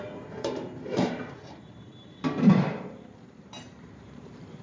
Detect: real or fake fake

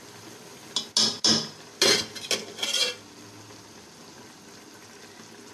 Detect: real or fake real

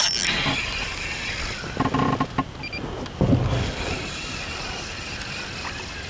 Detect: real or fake real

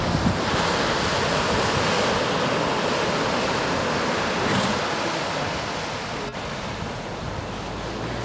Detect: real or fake real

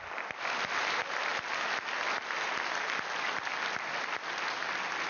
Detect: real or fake real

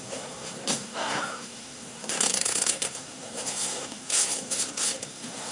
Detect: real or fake fake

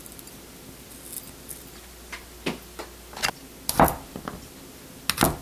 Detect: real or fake real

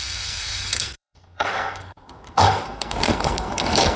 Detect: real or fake fake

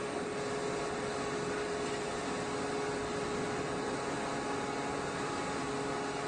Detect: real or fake real